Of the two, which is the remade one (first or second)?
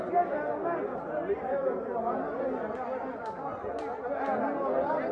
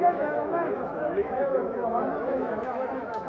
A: second